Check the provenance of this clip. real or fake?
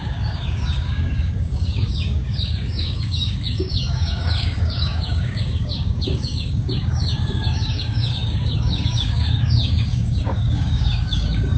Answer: fake